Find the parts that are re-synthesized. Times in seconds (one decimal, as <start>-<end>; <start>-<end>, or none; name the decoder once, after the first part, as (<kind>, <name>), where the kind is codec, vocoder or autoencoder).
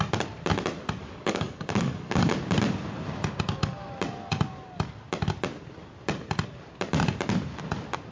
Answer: 1.0-2.3 (codec, DAC)